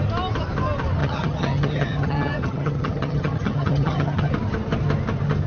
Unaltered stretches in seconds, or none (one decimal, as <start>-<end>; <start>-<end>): 0.0-1.0; 4.3-5.5